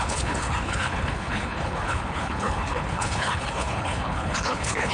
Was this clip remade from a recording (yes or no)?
yes